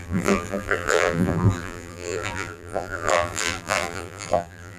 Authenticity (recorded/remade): remade